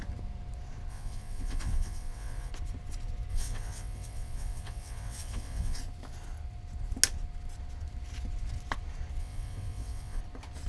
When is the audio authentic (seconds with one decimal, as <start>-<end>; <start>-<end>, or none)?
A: 0.0-0.9; 2.5-3.3; 5.8-9.2; 10.2-10.7